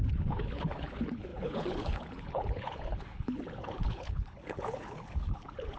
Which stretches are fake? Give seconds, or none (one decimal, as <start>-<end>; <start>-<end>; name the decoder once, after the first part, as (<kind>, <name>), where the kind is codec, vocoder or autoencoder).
0.0-5.8 (codec, HILCodec)